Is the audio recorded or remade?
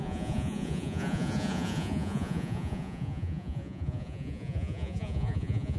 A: remade